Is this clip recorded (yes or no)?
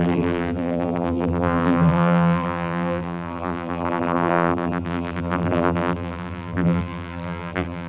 no